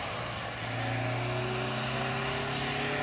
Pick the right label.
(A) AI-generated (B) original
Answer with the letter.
B